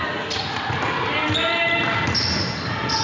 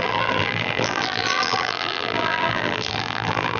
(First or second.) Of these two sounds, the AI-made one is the second